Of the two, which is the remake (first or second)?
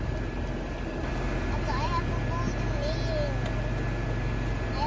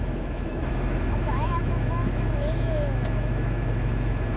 second